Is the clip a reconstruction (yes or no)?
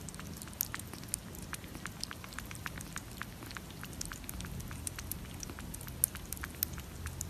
no